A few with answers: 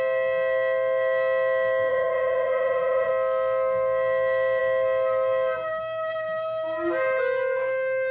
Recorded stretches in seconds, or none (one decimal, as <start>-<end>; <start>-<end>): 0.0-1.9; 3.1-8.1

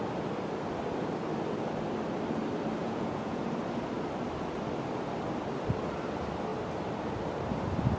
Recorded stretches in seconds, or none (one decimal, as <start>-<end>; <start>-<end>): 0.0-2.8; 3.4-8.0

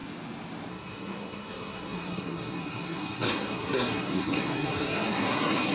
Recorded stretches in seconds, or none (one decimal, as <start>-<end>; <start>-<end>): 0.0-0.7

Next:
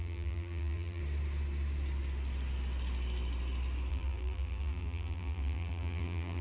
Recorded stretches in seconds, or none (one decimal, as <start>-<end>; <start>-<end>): 1.0-3.9

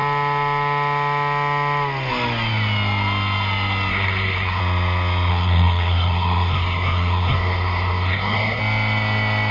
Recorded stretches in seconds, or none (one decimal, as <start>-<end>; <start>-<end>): 0.0-3.9; 4.6-5.3; 8.6-9.5